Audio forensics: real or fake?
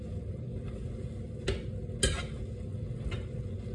real